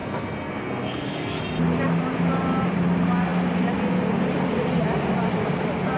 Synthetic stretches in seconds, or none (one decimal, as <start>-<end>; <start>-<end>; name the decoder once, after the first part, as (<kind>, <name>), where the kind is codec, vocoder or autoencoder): 0.0-1.4 (codec, SNAC)